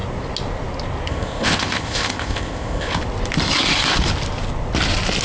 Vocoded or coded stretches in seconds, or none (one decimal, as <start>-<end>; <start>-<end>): 1.1-3.0